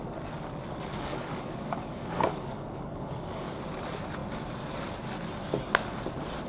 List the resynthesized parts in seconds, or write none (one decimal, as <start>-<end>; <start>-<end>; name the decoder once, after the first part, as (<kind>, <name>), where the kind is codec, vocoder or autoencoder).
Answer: 0.9-3.6 (codec, DAC)